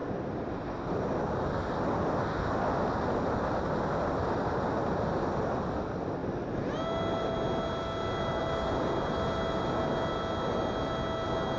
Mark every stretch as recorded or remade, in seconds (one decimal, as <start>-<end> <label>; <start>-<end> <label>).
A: 0.0-11.6 recorded